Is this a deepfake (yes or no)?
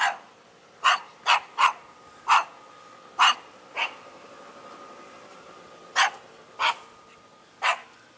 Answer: no